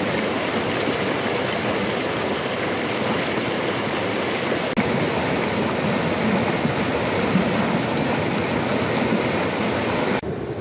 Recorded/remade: recorded